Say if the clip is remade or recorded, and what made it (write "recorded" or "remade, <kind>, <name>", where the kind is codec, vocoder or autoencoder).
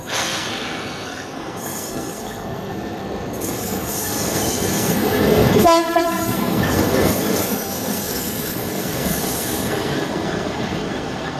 remade, codec, SNAC